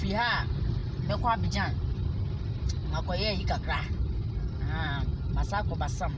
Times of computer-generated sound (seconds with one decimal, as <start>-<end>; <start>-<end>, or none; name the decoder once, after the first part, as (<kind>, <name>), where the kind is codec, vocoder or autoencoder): 0.0-2.8 (vocoder, BigVGAN v2); 3.4-6.2